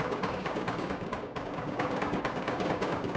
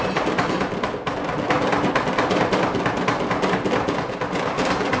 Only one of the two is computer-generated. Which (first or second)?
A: first